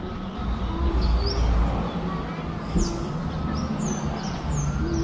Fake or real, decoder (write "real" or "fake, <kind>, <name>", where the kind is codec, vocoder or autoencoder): real